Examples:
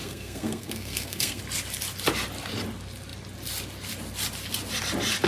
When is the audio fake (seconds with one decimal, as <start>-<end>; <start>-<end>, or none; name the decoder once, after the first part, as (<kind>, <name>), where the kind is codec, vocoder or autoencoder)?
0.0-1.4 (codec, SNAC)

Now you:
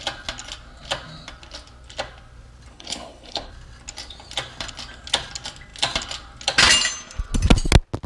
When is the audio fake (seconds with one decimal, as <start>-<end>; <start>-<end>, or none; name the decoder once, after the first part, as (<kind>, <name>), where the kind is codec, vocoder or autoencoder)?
2.7-3.5 (codec, HILCodec)

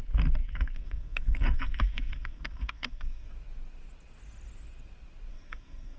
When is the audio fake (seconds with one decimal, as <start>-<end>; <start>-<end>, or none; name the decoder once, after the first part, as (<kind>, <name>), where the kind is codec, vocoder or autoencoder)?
0.4-3.3 (codec, SNAC); 5.3-6.0

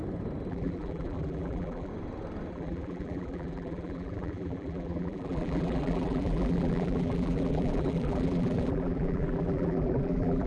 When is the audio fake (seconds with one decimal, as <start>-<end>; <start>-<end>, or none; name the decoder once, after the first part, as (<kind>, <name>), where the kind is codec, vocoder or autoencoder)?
0.5-1.9 (vocoder, BigVGAN v2); 2.5-10.5